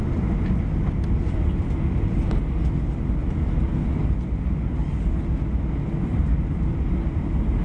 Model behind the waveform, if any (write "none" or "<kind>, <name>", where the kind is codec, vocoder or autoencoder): none